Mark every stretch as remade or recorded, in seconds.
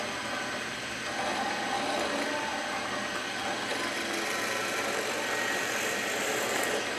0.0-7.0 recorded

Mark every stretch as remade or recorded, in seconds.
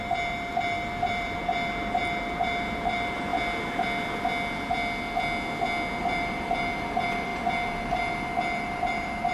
0.0-3.3 remade; 3.3-6.0 recorded; 6.0-9.3 remade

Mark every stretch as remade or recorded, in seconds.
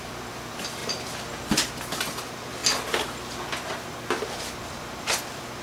0.0-2.6 remade; 2.6-4.6 recorded; 4.6-5.6 remade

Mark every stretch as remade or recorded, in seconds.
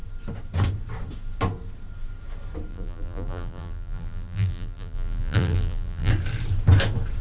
0.0-2.7 recorded; 2.7-6.1 remade; 6.1-7.2 recorded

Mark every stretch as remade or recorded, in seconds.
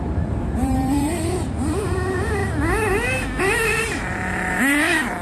0.0-2.4 remade; 2.4-3.4 recorded; 3.4-5.2 remade